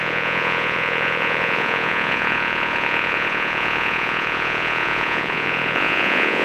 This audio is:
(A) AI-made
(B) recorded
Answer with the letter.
A